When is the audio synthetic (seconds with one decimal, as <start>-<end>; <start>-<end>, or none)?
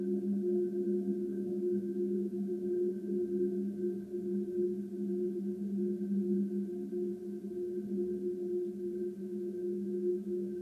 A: 1.3-2.5; 9.2-10.6